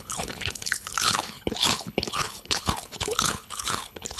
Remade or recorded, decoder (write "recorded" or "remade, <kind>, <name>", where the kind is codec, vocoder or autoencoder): remade, codec, HILCodec